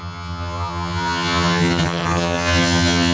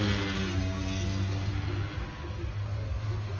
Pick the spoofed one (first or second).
first